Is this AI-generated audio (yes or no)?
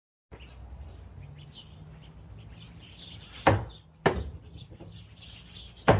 no